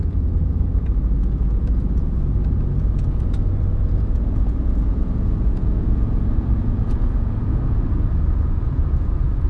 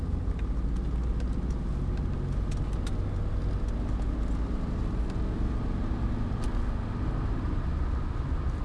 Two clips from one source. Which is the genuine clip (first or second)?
second